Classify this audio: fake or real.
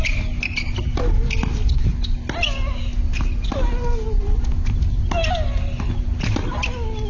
real